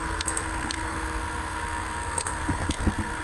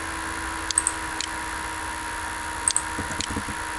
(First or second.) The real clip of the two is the second